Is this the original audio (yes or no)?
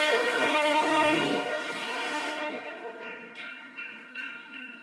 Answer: no